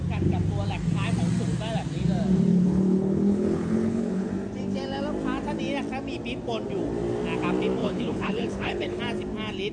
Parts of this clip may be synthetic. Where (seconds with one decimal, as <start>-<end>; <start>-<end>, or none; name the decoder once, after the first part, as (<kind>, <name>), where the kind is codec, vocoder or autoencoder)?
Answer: 2.5-4.3 (codec, HILCodec); 7.8-9.0